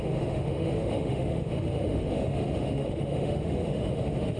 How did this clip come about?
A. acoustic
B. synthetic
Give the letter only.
B